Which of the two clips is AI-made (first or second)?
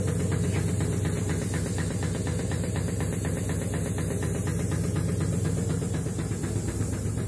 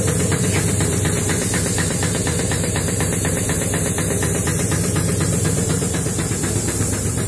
second